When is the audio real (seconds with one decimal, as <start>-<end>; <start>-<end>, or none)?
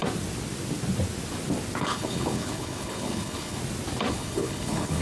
0.0-1.8; 3.6-4.1